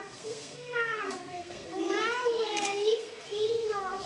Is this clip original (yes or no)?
no